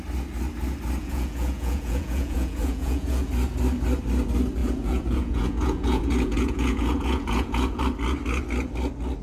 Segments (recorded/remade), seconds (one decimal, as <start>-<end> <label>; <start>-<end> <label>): 0.0-1.0 recorded; 1.0-3.3 remade; 3.3-4.6 recorded; 4.6-7.8 remade; 7.8-9.2 recorded